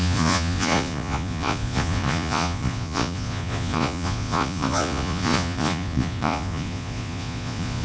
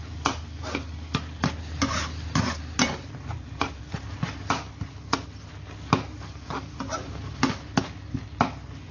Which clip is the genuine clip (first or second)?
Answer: second